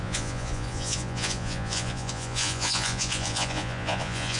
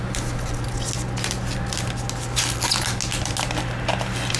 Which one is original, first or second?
second